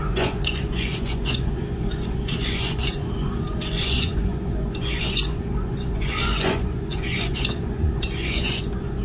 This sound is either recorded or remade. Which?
remade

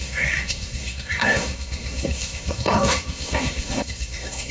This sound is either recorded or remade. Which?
remade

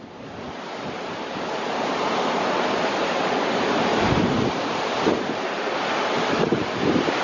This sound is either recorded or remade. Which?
remade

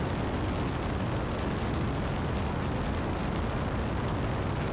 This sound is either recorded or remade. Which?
recorded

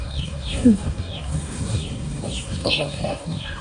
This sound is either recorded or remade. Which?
remade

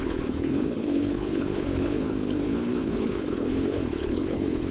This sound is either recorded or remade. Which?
remade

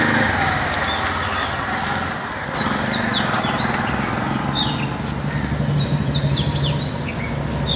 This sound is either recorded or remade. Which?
recorded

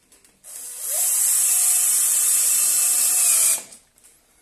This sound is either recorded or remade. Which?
recorded